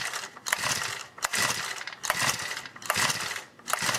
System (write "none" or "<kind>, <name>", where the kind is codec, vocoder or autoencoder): none